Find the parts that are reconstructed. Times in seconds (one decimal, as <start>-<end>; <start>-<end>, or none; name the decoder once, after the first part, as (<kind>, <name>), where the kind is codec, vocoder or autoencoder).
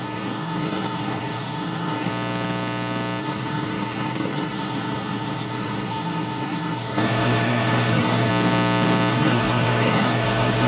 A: 0.0-2.1 (codec, SNAC); 3.2-8.3; 9.1-10.7